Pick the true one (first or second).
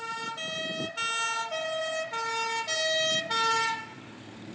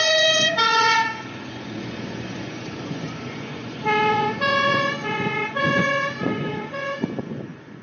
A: first